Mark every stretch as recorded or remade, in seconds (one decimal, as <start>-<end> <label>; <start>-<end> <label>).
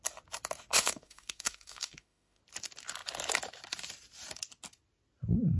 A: 0.0-0.7 recorded; 0.7-2.4 remade; 2.4-5.6 recorded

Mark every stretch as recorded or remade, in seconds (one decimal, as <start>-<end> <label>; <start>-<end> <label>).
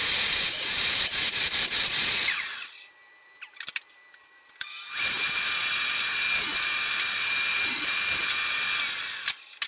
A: 0.0-2.8 remade; 2.8-9.7 recorded